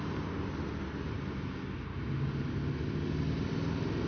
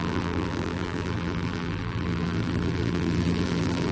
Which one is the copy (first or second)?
second